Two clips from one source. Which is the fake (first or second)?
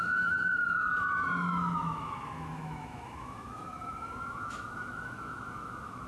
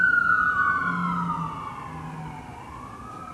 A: first